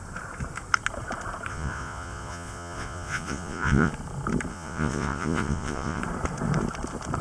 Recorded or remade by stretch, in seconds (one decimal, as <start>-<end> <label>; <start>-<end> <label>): 0.0-1.5 recorded; 1.5-3.9 remade; 3.9-4.5 recorded; 4.5-6.0 remade; 6.0-7.2 recorded